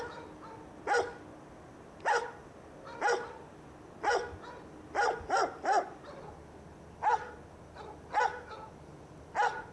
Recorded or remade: recorded